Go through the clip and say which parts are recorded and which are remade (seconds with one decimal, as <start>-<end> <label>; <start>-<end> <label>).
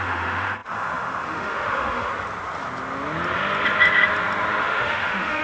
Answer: 0.0-2.1 remade; 2.1-4.6 recorded; 4.6-5.4 remade